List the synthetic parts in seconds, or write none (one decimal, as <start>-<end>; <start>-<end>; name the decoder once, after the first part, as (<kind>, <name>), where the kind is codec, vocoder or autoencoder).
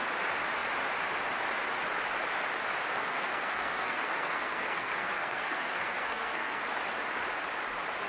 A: 2.9-6.6 (codec, SNAC)